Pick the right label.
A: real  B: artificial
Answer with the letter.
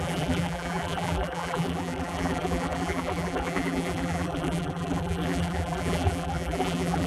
B